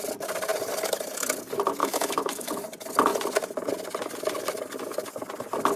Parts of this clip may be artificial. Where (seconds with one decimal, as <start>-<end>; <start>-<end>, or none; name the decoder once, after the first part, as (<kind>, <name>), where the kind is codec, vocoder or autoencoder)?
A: 1.8-2.5 (autoencoder, DAC-VAE)